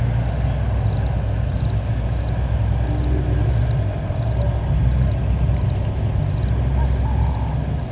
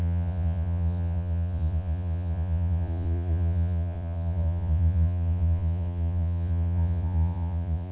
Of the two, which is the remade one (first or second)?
second